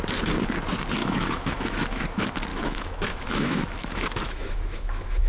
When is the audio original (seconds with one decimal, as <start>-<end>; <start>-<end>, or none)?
0.0-1.0; 2.0-2.5